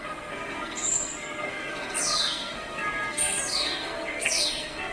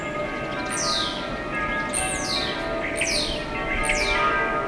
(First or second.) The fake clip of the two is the first